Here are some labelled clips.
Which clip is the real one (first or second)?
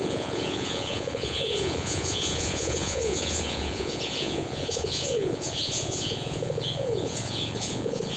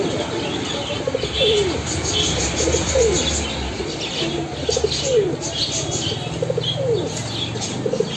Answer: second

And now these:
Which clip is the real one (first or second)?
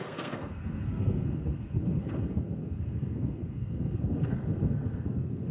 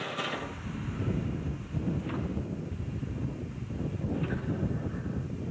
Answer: second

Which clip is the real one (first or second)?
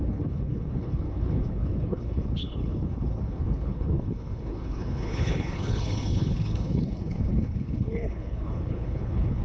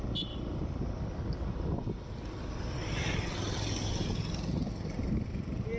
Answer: second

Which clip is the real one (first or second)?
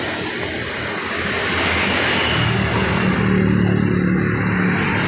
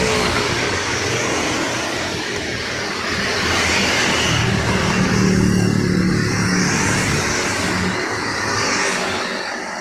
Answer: first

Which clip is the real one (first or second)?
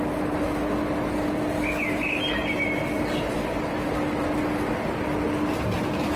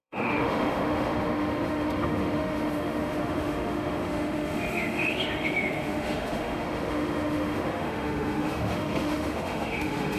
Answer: first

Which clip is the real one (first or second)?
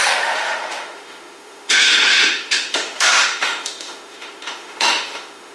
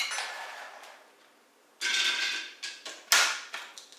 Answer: second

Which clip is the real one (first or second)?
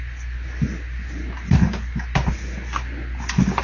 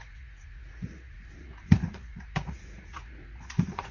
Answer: first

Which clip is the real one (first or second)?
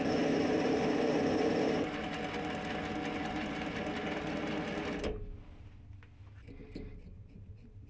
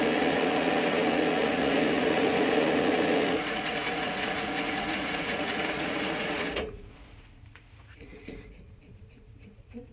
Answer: first